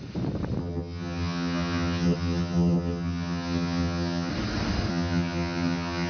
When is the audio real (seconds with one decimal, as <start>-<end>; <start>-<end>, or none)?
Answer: 0.0-0.6; 4.3-4.9